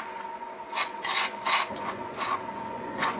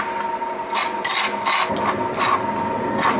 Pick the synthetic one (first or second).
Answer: first